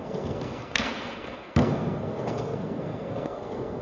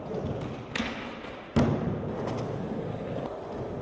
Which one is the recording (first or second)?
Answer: second